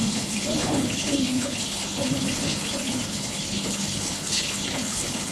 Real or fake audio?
fake